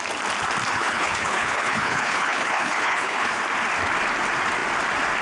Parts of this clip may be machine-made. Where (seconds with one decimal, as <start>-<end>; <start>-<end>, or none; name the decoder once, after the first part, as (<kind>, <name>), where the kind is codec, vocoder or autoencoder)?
0.7-3.4 (codec, HILCodec)